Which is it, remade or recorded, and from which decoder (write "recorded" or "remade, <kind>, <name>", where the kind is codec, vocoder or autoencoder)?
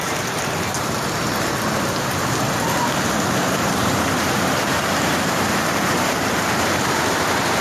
remade, vocoder, BigVGAN v2